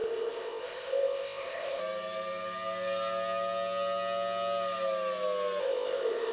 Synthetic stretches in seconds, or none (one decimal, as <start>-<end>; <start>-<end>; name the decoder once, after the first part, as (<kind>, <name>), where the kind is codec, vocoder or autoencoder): 0.0-1.8 (codec, ZipCodec); 5.6-6.3